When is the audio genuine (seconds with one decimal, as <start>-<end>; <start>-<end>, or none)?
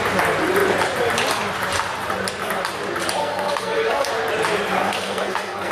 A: 0.0-3.2; 4.1-4.8